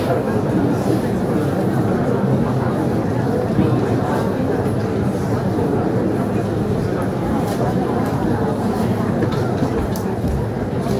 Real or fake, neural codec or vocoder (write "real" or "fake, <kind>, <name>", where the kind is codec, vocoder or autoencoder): real